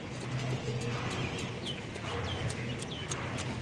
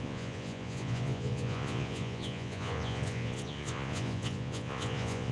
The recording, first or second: first